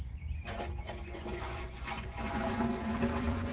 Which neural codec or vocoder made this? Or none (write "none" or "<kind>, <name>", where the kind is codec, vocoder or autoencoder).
vocoder, Vocos